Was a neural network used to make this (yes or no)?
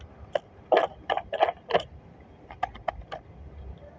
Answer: no